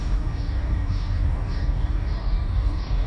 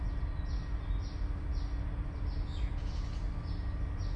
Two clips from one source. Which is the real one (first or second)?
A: second